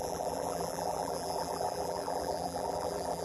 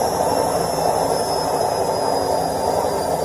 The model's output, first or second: first